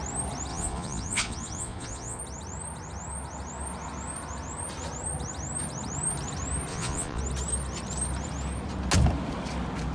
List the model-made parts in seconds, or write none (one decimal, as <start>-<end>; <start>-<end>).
0.5-2.2; 6.7-7.2